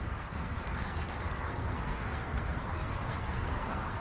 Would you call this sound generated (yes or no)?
yes